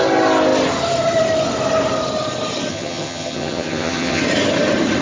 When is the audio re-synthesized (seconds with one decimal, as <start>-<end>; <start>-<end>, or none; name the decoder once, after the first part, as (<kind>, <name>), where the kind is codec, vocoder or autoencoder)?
2.7-4.2 (vocoder, HiFi-GAN)

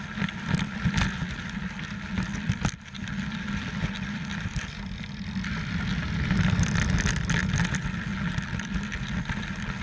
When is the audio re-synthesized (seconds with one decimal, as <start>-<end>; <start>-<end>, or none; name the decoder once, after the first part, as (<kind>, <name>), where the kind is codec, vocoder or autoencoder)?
none